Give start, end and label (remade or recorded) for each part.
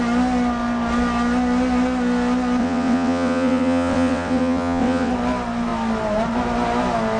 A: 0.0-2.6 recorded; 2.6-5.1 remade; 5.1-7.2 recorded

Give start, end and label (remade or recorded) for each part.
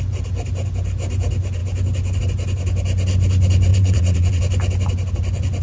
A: 0.0-3.7 recorded; 3.7-4.4 remade; 4.4-5.6 recorded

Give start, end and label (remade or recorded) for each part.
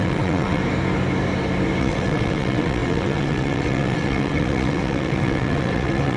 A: 0.0-0.6 remade; 0.6-1.8 recorded; 1.8-6.2 remade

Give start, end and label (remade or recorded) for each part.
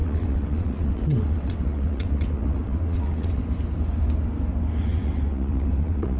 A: 0.0-3.4 remade; 3.4-4.8 recorded; 4.8-6.2 remade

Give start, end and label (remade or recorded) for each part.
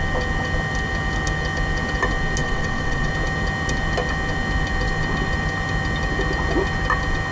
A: 0.0-2.4 recorded; 2.4-3.1 remade; 3.1-7.3 recorded